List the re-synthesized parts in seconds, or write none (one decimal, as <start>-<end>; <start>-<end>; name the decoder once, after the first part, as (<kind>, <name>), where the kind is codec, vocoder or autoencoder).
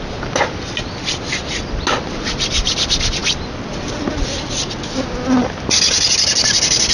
none